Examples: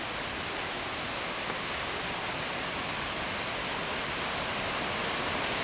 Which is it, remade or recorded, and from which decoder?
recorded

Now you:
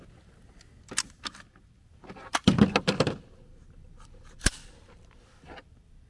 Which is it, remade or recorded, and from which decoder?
recorded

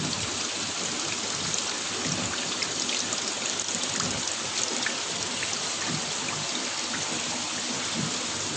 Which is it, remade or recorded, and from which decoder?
recorded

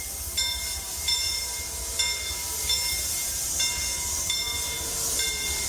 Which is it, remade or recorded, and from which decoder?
recorded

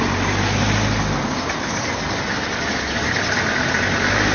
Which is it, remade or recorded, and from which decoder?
recorded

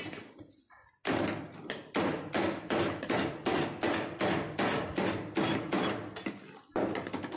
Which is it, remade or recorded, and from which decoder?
recorded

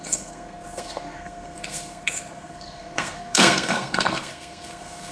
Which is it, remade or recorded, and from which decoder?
remade, codec, SNAC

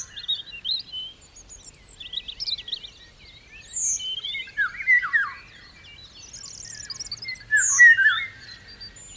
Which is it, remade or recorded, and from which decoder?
recorded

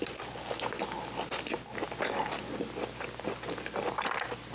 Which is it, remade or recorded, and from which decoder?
recorded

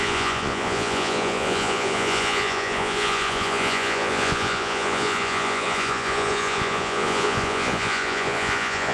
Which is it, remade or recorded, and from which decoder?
remade, vocoder, Vocos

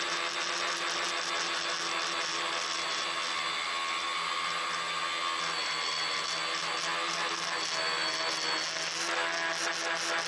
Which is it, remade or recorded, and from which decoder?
recorded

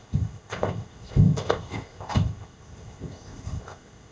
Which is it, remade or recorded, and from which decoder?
remade, codec, ZipCodec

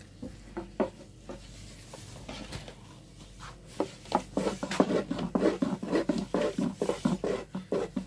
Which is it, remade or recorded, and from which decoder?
recorded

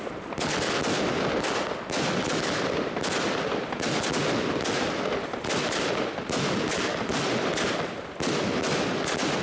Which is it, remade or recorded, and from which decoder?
recorded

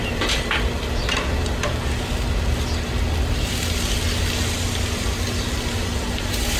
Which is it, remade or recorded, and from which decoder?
recorded